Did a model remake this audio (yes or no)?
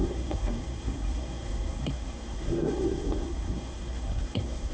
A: yes